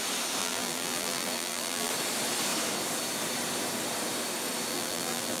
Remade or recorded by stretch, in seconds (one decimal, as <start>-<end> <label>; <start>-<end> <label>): 0.0-0.4 recorded; 0.4-1.9 remade; 1.9-4.7 recorded; 4.7-5.4 remade